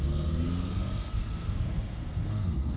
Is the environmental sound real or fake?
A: fake